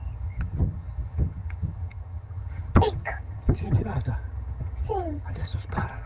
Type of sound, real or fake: fake